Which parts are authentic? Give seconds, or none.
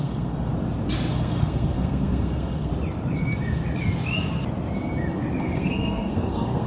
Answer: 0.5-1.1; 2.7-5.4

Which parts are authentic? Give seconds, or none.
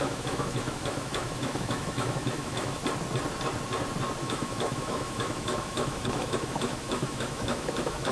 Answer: 2.8-4.2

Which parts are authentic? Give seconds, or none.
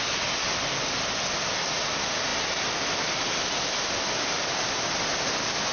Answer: 0.0-5.7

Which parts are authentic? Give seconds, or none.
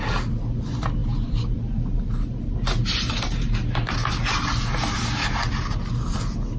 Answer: 0.0-6.6